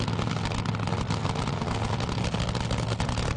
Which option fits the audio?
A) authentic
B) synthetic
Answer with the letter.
A